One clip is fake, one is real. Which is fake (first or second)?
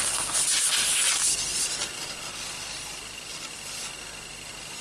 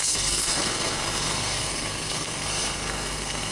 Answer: second